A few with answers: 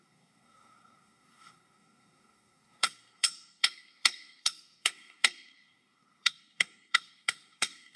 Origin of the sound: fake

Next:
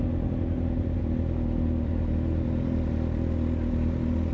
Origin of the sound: real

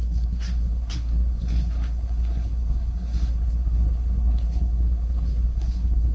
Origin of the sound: fake